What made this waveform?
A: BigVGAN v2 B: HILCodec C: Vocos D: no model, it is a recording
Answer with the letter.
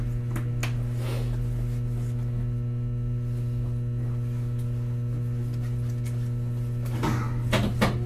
D